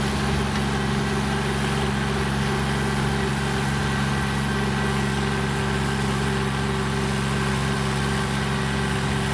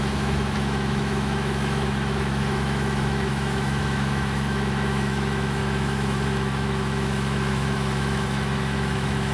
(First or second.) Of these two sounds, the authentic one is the first